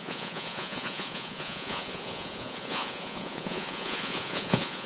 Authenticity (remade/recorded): remade